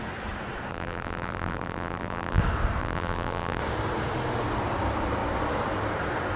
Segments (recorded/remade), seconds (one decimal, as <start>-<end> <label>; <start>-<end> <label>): 0.0-0.7 recorded; 0.7-2.4 remade; 2.4-2.8 recorded; 2.8-3.6 remade; 3.6-6.4 recorded